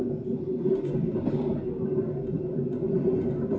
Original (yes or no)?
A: yes